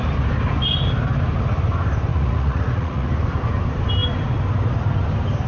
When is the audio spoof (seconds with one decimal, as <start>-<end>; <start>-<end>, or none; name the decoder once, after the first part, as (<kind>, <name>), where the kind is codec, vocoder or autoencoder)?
2.1-3.1 (vocoder, Vocos)